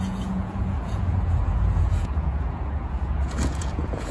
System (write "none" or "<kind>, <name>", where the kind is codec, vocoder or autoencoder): vocoder, Vocos